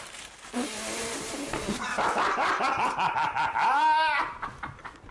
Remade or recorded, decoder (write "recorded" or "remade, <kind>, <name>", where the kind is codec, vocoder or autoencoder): remade, vocoder, BigVGAN v2